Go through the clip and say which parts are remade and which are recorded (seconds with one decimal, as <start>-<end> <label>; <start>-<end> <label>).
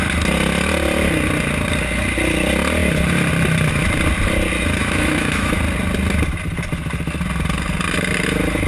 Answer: 0.0-4.8 recorded; 4.8-5.6 remade; 5.6-8.7 recorded